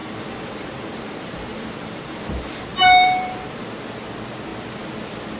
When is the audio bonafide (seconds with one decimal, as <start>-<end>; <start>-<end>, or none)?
2.2-2.7; 3.6-5.4